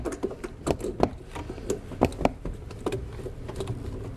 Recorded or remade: recorded